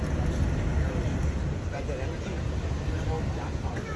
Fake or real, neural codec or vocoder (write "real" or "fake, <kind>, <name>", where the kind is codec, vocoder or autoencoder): real